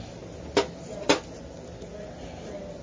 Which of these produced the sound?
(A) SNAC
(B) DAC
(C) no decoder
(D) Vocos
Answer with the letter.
C